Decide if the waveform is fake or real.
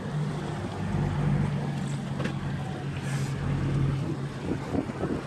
real